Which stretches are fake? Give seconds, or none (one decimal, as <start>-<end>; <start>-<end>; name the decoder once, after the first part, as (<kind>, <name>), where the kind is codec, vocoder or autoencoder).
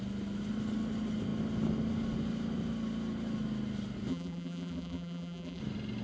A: 4.1-5.6 (vocoder, BigVGAN v2)